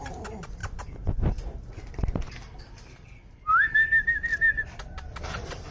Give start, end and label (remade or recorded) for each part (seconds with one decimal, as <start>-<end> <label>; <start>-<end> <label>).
0.0-0.6 recorded; 0.6-1.7 remade; 1.7-4.3 recorded; 4.3-5.7 remade

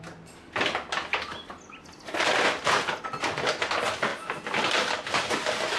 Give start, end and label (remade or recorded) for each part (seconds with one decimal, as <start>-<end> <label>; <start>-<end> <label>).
0.0-1.1 recorded; 1.1-3.0 remade; 3.0-4.1 recorded; 4.1-5.3 remade; 5.3-5.8 recorded

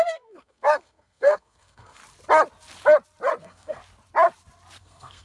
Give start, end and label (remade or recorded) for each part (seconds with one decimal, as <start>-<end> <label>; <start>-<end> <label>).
0.0-2.0 remade; 2.0-3.4 recorded; 3.4-3.8 remade; 3.8-4.8 recorded; 4.8-5.2 remade

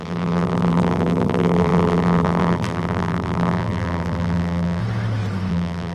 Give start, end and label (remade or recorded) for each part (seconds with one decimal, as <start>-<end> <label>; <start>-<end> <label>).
0.0-4.8 remade; 4.8-5.5 recorded; 5.5-5.9 remade